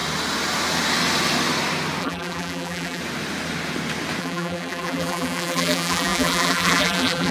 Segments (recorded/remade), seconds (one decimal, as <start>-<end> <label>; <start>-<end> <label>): 0.0-2.0 recorded; 2.0-3.0 remade; 3.0-4.2 recorded; 4.2-7.3 remade